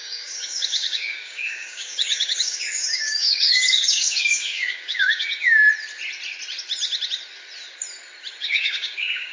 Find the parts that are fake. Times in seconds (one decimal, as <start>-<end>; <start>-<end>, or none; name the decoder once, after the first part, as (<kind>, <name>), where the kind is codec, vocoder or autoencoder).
0.0-5.6 (codec, DAC); 8.4-9.3